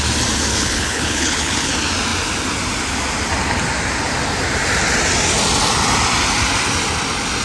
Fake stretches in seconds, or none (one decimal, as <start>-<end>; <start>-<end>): 0.5-1.7